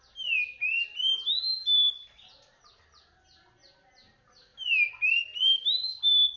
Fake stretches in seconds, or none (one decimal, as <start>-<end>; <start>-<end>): none